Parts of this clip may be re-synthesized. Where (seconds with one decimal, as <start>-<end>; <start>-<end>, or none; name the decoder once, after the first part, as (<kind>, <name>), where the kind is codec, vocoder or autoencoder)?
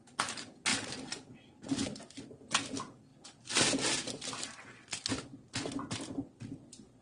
none